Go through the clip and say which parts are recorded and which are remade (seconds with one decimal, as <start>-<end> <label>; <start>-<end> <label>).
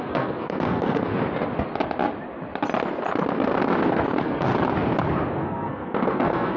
0.0-1.1 remade; 1.1-3.9 recorded; 3.9-4.5 remade; 4.5-5.3 recorded; 5.3-6.6 remade